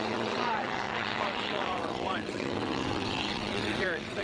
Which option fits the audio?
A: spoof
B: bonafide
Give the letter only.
A